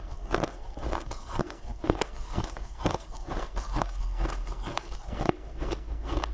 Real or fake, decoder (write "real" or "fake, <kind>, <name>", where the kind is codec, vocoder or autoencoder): fake, codec, SNAC